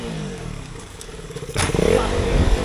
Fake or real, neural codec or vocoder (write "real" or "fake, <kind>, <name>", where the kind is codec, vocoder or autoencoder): fake, codec, DAC